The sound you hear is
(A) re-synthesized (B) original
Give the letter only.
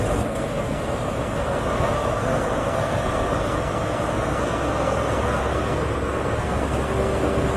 A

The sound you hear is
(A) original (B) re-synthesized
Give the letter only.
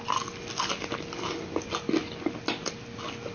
A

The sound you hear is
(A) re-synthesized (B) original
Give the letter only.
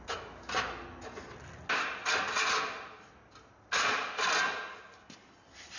B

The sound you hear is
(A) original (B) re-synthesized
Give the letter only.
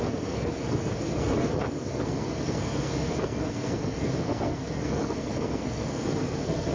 B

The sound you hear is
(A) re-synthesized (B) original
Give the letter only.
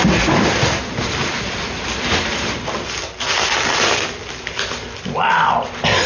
B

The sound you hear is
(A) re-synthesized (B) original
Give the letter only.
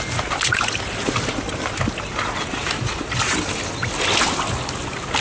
B